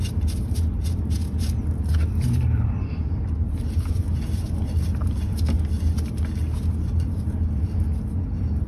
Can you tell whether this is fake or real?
real